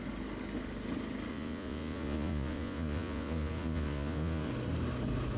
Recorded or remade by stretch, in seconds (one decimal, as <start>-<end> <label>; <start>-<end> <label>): 0.0-1.3 recorded; 1.3-4.5 remade; 4.5-5.4 recorded